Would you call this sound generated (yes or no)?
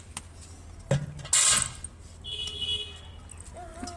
no